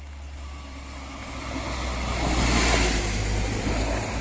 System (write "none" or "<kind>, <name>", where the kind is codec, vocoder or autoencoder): none